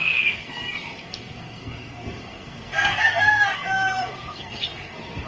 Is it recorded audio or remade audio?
remade